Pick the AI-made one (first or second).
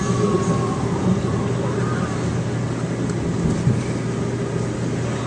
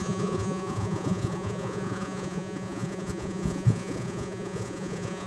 second